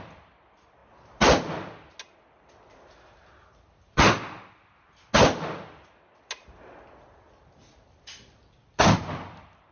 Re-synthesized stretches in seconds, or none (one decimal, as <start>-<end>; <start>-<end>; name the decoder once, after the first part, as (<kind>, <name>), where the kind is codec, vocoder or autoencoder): none